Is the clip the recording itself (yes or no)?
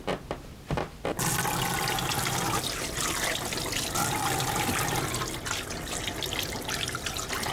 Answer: yes